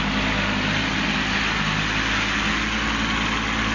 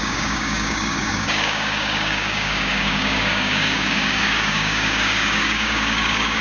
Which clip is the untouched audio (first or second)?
first